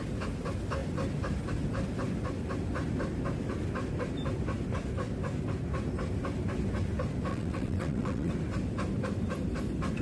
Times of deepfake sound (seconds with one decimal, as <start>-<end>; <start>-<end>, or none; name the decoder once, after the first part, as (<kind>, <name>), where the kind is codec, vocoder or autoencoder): 7.3-8.3 (vocoder, WaveNeXt)